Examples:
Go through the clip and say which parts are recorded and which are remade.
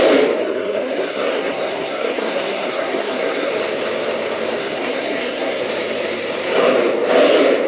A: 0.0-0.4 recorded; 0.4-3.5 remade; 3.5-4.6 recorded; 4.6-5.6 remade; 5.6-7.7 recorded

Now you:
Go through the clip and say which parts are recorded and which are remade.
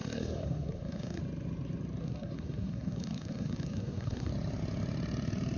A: 0.0-1.2 remade; 1.2-2.0 recorded; 2.0-4.3 remade; 4.3-5.6 recorded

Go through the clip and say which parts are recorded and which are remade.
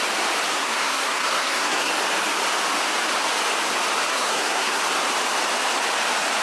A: 0.0-0.5 recorded; 0.5-1.9 remade; 1.9-4.1 recorded; 4.1-4.8 remade; 4.8-6.4 recorded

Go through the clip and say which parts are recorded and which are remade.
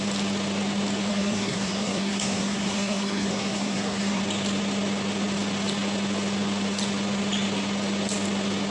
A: 0.0-1.1 recorded; 1.1-4.2 remade; 4.2-8.7 recorded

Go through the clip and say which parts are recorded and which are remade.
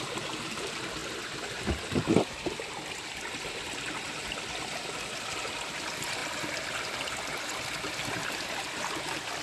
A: 0.0-9.4 recorded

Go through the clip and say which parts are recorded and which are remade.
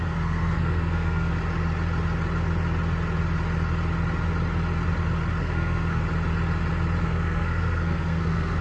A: 0.0-1.3 remade; 1.3-5.4 recorded; 5.4-6.0 remade; 6.0-7.0 recorded; 7.0-8.6 remade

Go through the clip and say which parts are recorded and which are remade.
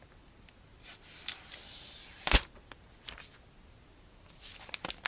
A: 0.0-5.1 recorded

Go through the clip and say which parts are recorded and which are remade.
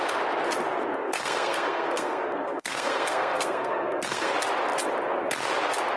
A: 0.0-1.0 recorded; 1.0-4.3 remade; 4.3-6.0 recorded